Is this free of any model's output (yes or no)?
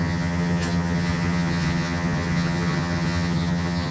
no